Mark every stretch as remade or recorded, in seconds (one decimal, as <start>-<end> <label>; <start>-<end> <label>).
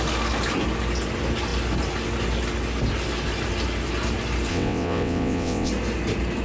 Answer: 0.0-4.5 recorded; 4.5-5.7 remade; 5.7-6.4 recorded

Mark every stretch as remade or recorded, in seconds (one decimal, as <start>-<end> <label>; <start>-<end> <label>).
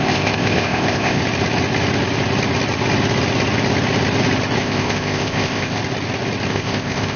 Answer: 0.0-1.2 remade; 1.2-4.6 recorded; 4.6-5.8 remade; 5.8-6.5 recorded; 6.5-7.2 remade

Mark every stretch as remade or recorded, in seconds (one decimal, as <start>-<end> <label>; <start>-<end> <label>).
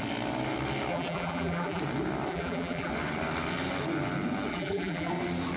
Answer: 0.0-0.9 recorded; 0.9-1.8 remade; 1.8-2.3 recorded; 2.3-2.9 remade; 2.9-4.5 recorded; 4.5-5.1 remade; 5.1-5.6 recorded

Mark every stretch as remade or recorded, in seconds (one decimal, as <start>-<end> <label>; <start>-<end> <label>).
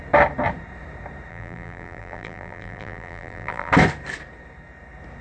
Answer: 0.0-1.3 recorded; 1.3-3.7 remade; 3.7-5.2 recorded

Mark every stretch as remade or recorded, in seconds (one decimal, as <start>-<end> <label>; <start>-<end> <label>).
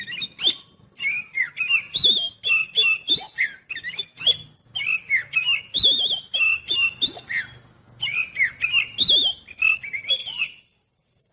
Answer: 0.0-10.2 recorded; 10.2-11.3 remade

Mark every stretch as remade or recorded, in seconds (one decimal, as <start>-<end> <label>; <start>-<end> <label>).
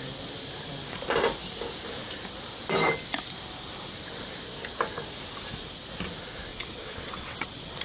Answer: 0.0-6.5 recorded; 6.5-7.8 remade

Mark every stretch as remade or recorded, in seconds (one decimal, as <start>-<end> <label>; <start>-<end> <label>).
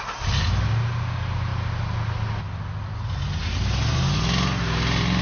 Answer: 0.0-5.2 recorded